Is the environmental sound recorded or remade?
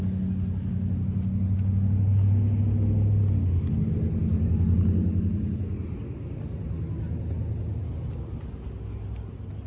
recorded